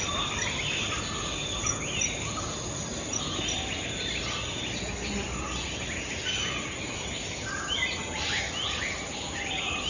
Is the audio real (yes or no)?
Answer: yes